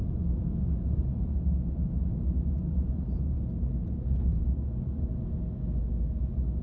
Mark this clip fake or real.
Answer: real